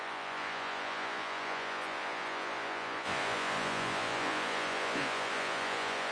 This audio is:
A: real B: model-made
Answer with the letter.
B